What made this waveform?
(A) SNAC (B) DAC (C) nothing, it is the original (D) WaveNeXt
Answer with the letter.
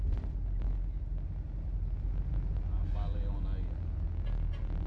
C